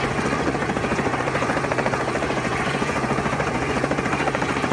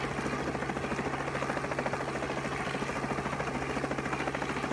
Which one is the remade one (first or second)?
first